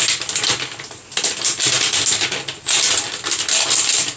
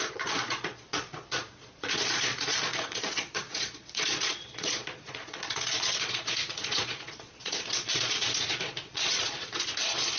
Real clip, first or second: first